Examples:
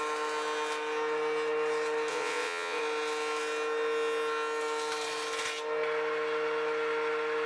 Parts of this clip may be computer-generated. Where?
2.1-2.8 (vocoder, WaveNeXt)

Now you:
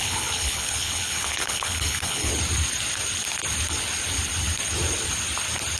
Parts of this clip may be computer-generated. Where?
0.0-2.3 (codec, HILCodec)

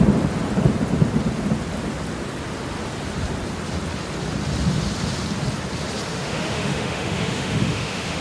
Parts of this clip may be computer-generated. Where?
6.1-8.2 (autoencoder, DAC-VAE)

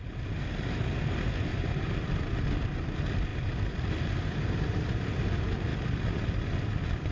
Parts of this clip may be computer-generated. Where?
1.5-2.2 (vocoder, BigVGAN v2); 5.7-6.4

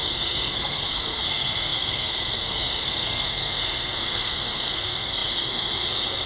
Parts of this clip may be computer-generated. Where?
0.0-6.3 (codec, SNAC)